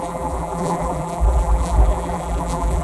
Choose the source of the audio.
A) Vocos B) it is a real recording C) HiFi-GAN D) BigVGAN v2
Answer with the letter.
D